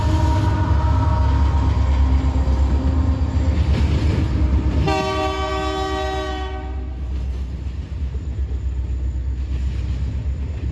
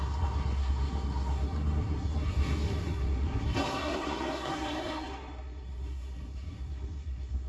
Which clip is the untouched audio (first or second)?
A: first